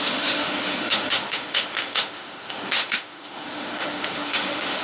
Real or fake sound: fake